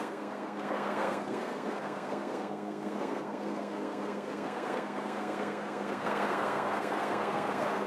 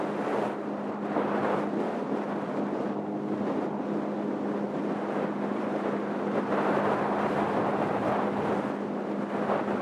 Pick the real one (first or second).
second